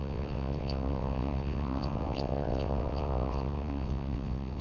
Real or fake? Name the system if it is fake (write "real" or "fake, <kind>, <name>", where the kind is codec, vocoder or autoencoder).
fake, vocoder, WaveNeXt